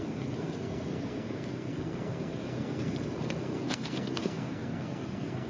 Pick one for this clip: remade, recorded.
remade